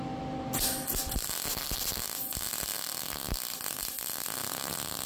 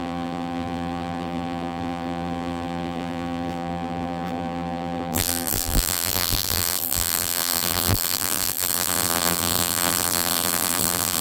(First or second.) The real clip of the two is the first